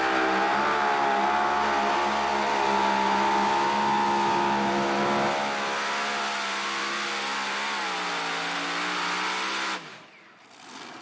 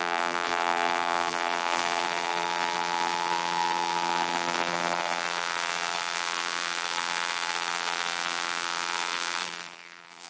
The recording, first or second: first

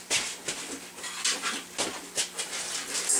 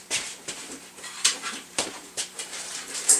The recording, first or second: first